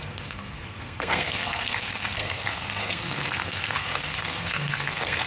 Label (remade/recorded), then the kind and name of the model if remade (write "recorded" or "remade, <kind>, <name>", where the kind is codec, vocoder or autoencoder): remade, codec, SNAC